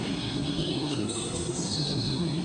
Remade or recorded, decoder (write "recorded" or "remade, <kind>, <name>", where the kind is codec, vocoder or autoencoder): remade, codec, SNAC